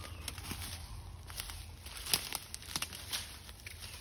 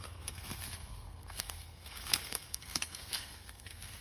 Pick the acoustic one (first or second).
first